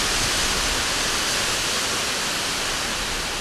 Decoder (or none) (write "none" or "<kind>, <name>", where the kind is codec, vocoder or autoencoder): none